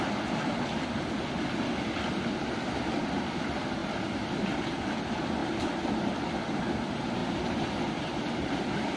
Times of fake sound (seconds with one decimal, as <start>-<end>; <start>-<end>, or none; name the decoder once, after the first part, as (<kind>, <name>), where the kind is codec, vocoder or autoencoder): none